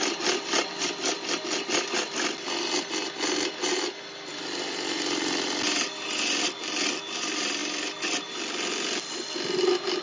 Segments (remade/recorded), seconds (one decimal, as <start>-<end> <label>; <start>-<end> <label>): 0.0-10.0 recorded